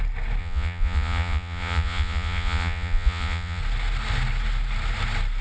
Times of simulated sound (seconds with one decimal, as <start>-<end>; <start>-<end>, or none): 0.4-3.6